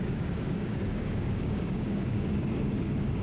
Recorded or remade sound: remade